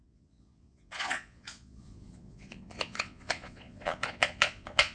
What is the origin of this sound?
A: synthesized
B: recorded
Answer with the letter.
A